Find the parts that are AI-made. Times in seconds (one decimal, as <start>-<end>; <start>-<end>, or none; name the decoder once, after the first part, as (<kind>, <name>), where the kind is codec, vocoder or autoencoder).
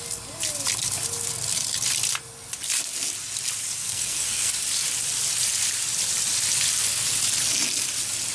3.8-4.5 (codec, SNAC)